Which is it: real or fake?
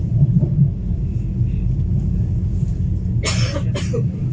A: real